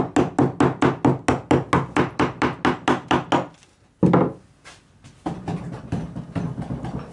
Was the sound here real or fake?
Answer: real